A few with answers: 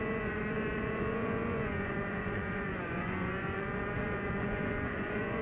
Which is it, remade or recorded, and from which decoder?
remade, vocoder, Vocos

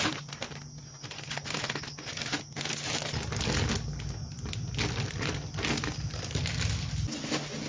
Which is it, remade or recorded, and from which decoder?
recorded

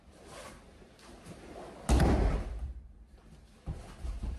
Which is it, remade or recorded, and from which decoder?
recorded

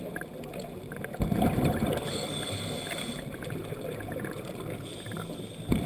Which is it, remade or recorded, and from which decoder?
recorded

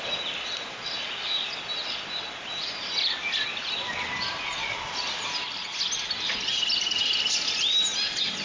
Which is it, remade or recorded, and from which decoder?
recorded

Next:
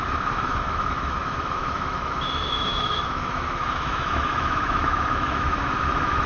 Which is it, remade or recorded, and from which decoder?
remade, autoencoder, DAC-VAE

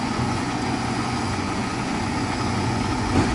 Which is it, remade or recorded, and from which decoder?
remade, vocoder, Vocos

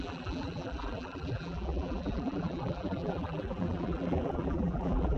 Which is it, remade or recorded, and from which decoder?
remade, vocoder, BigVGAN v2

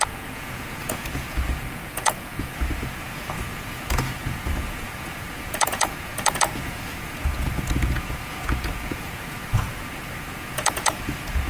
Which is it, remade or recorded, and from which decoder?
remade, vocoder, Vocos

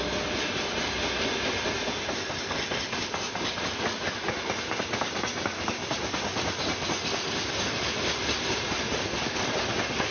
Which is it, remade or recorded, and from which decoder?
recorded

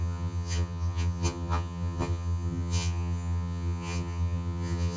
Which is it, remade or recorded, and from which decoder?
remade, vocoder, HiFi-GAN